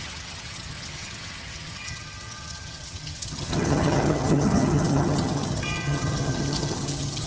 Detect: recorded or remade remade